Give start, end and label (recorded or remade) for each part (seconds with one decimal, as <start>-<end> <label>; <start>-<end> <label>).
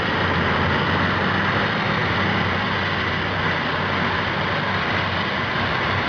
0.0-6.1 recorded